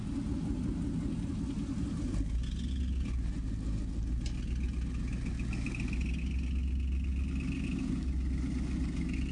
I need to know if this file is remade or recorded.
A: recorded